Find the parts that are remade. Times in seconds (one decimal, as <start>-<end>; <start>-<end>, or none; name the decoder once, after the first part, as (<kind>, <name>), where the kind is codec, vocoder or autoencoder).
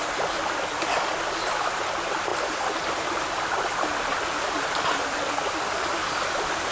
none